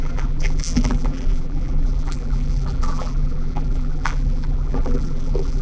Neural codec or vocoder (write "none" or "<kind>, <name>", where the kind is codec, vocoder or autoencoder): vocoder, BigVGAN v2